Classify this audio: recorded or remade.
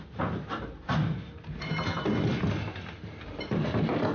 recorded